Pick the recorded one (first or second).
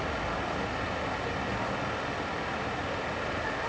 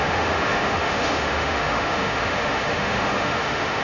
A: first